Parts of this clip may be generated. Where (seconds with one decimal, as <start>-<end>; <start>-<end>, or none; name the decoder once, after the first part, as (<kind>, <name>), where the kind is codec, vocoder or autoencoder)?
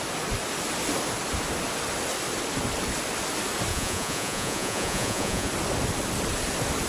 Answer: 3.7-5.5 (vocoder, Vocos)